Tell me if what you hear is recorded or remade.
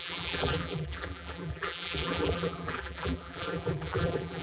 remade